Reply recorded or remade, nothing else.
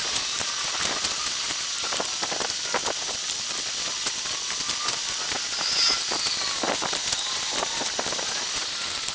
recorded